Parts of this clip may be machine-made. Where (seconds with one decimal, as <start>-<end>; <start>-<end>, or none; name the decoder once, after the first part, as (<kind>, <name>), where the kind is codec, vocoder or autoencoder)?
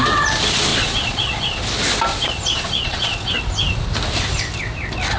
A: 0.7-1.6 (vocoder, Vocos); 2.1-3.3